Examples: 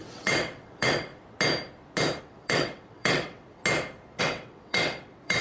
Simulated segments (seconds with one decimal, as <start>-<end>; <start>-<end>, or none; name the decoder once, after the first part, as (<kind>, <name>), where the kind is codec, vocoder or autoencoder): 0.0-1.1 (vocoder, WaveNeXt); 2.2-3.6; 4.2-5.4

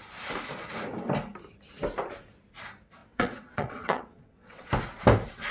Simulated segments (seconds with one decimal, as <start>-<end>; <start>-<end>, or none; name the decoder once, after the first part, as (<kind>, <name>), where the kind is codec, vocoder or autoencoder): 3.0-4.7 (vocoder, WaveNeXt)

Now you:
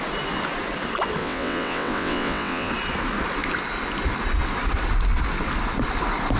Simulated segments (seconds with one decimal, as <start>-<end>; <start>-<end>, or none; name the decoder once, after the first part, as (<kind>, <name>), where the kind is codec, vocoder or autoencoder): 1.2-2.7 (vocoder, WaveNeXt)